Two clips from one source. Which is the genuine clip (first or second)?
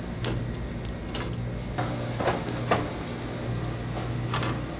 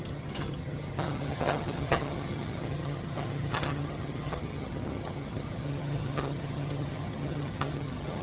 first